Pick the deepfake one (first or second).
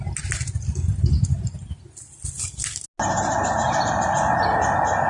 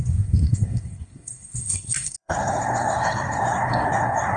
second